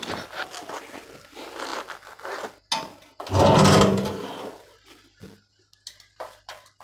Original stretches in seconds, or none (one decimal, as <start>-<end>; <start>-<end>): 0.0-6.8